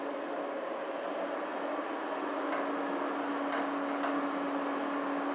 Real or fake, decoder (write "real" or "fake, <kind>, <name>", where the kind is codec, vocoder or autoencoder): real